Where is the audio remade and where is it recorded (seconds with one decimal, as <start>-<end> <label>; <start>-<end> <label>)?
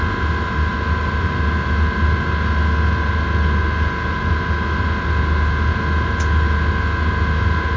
0.0-0.7 recorded; 0.7-1.3 remade; 1.3-7.8 recorded